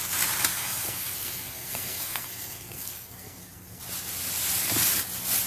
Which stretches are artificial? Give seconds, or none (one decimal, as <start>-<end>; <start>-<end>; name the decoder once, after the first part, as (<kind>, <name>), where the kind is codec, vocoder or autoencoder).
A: 0.5-3.8 (codec, SNAC)